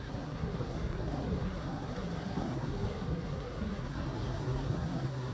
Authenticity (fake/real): fake